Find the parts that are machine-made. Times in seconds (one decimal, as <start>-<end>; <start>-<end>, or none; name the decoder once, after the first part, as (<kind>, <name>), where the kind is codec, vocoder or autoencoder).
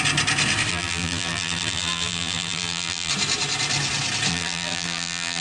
0.7-3.1 (vocoder, BigVGAN v2); 4.3-5.4